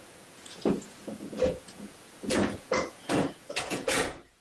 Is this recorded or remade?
remade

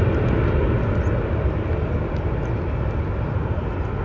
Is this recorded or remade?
recorded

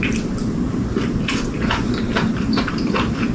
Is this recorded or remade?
recorded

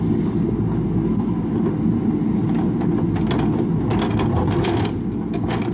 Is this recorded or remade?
recorded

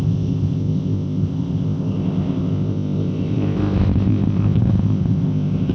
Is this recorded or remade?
remade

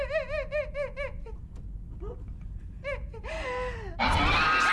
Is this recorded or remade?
recorded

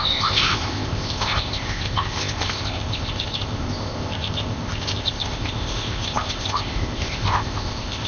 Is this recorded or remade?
remade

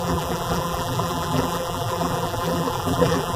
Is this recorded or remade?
remade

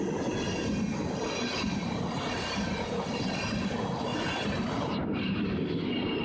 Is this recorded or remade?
recorded